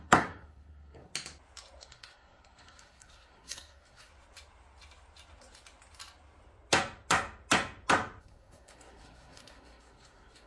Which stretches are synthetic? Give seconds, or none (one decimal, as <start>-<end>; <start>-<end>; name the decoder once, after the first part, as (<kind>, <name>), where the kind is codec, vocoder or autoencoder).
0.0-1.1 (codec, SNAC); 1.8-4.1; 8.2-10.5